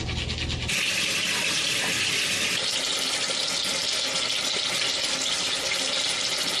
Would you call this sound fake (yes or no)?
no